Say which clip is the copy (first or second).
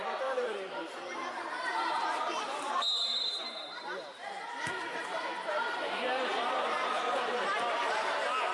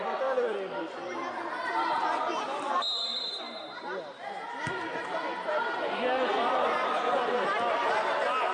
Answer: first